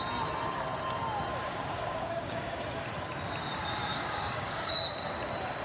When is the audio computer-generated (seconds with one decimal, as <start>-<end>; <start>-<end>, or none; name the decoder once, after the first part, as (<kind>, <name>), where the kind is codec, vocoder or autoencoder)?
1.3-2.6 (codec, DAC); 3.9-4.8